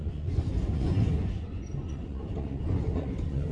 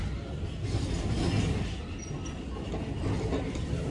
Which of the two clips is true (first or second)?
second